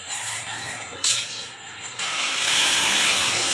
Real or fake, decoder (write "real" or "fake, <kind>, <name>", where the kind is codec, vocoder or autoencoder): fake, codec, SNAC